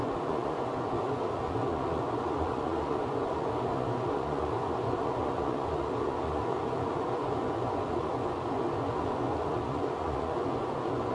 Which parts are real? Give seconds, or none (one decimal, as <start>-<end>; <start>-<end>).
none